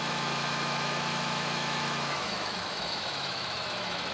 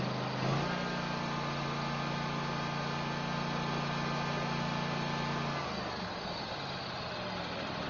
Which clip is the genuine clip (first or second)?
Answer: second